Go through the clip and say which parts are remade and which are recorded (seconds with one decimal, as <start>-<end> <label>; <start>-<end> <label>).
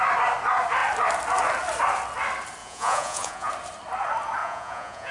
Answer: 0.0-2.6 recorded; 2.6-3.5 remade; 3.5-4.4 recorded; 4.4-5.1 remade